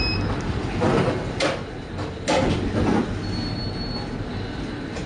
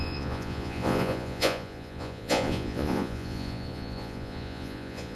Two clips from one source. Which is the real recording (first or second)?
first